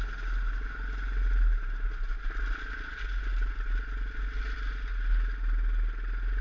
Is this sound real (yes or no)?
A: yes